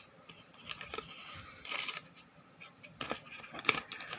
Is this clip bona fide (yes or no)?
yes